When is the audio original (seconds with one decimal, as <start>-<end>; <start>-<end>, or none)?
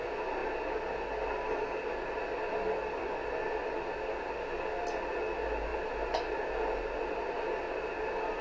0.0-8.4